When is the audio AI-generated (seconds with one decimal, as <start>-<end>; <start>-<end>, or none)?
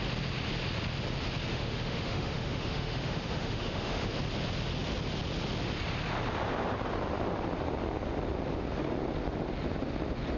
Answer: 1.5-4.1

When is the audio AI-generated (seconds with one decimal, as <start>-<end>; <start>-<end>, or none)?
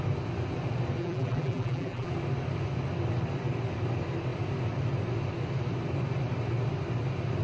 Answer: 1.0-2.1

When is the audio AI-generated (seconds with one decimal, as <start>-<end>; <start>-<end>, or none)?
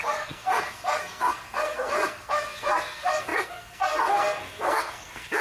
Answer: 0.0-5.4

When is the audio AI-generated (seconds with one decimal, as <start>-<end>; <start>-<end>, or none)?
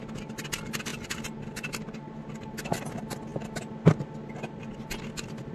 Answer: none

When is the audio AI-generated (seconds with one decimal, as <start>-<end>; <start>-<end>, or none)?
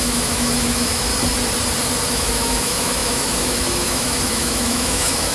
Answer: 0.0-1.1; 2.1-5.3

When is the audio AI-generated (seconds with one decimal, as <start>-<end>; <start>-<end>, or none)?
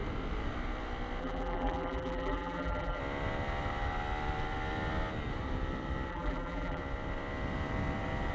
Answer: 1.2-3.0; 6.1-6.8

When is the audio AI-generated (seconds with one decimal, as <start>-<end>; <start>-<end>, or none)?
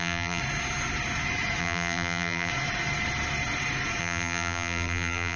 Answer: 0.0-0.4; 1.6-2.5; 4.0-5.4